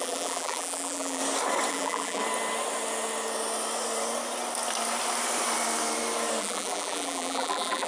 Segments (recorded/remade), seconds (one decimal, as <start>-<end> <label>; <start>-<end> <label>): 0.0-1.2 remade; 1.2-1.7 recorded; 1.7-2.2 remade; 2.2-6.4 recorded; 6.4-7.9 remade